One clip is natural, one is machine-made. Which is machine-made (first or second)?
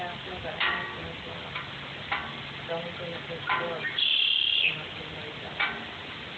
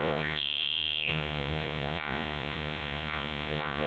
second